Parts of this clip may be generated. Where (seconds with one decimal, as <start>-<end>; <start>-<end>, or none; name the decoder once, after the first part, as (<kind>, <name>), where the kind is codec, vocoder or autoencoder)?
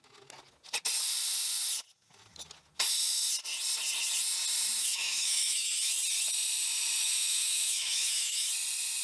4.8-5.9 (autoencoder, DAC-VAE); 7.0-8.5